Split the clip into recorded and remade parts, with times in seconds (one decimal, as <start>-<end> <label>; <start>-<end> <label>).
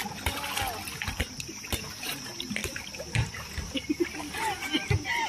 0.0-1.1 recorded; 1.1-5.3 remade